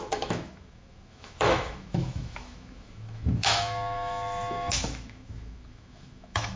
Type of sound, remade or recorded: remade